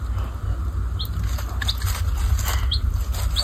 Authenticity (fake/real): real